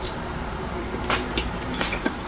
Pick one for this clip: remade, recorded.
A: remade